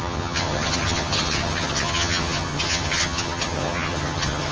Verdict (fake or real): fake